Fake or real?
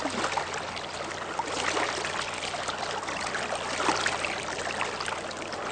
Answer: real